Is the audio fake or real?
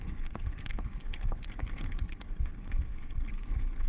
fake